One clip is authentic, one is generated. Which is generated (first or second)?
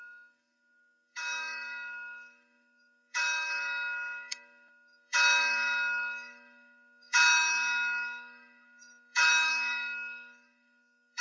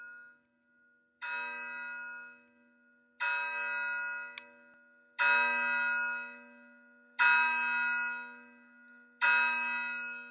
first